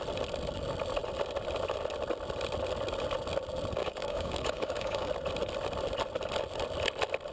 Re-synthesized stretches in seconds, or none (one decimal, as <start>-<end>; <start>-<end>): 3.8-5.1